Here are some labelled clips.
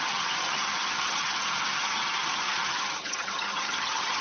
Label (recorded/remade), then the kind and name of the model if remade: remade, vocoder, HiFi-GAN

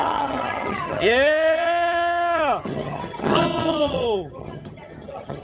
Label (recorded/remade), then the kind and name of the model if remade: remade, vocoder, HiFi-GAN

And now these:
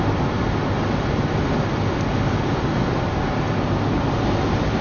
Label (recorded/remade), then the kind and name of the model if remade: recorded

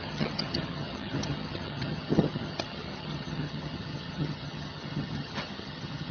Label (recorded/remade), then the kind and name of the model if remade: remade, vocoder, HiFi-GAN